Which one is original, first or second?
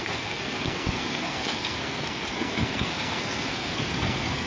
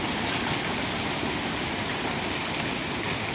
second